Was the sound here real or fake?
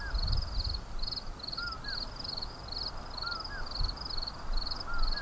real